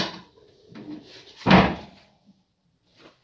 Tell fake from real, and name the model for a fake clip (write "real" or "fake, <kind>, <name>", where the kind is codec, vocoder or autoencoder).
fake, vocoder, BigVGAN v2